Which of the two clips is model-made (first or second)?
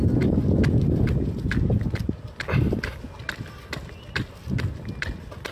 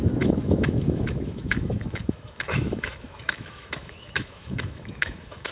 second